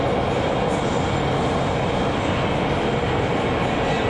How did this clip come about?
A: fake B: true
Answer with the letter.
B